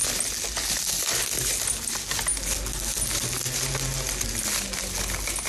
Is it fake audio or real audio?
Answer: real